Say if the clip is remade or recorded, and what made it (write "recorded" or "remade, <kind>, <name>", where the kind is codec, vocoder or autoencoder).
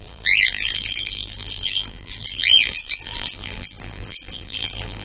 remade, vocoder, BigVGAN v2